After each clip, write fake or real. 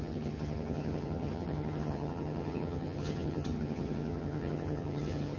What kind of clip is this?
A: fake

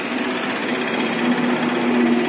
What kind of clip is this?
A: real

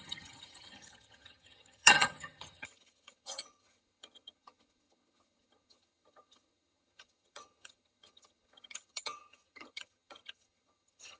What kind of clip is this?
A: fake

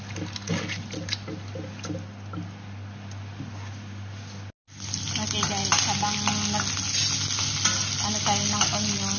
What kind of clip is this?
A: real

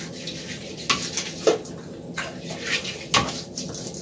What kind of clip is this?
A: real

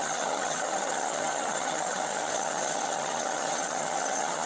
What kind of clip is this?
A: fake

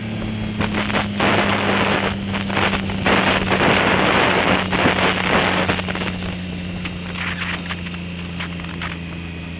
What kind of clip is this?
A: real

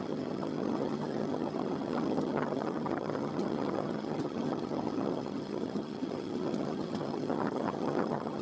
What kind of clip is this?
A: fake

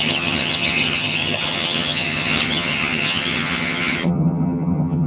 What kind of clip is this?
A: fake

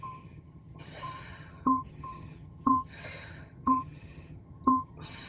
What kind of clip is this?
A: fake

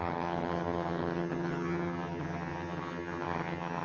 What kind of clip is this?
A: fake